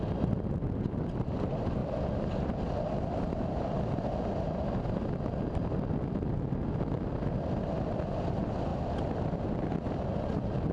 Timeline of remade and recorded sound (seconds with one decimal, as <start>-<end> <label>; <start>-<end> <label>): 0.0-1.8 recorded; 1.8-3.8 remade; 3.8-10.7 recorded